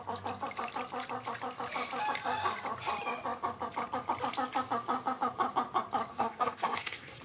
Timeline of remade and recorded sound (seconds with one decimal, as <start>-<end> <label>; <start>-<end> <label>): 0.0-6.1 recorded; 6.1-7.2 remade